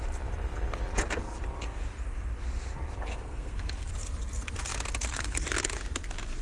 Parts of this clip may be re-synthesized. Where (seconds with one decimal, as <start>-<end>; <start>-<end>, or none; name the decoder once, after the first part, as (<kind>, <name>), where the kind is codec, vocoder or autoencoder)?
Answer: 3.1-3.9 (codec, SNAC)

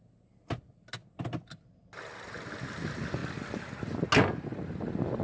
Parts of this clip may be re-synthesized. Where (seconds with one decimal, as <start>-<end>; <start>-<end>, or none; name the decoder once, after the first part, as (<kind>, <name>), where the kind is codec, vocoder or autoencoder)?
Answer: none

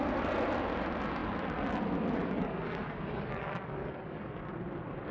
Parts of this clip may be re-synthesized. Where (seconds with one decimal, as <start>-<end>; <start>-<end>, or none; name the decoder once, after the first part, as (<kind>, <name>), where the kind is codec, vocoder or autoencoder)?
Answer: 2.2-4.3 (codec, DAC)